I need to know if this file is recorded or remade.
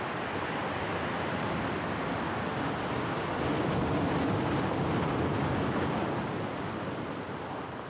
recorded